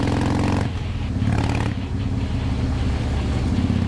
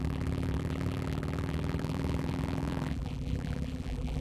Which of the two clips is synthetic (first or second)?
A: second